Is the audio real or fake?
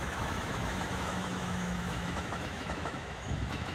fake